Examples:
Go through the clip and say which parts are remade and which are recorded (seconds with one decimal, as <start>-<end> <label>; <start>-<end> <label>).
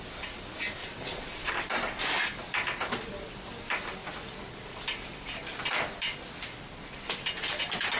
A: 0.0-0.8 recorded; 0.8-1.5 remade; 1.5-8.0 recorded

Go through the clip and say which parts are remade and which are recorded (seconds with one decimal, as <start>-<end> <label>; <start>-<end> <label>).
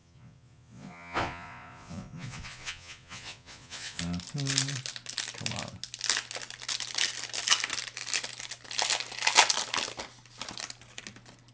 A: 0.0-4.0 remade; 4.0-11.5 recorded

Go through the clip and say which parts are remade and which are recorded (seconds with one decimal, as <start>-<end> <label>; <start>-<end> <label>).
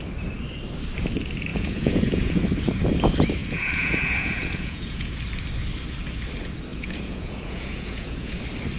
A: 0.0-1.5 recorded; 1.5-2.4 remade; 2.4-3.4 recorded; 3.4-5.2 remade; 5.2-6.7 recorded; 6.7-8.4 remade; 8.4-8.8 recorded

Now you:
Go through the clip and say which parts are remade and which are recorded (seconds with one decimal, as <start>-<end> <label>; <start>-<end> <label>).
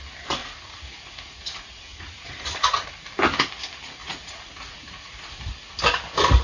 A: 0.0-0.4 recorded; 0.4-2.9 remade; 2.9-4.0 recorded; 4.0-5.4 remade; 5.4-6.4 recorded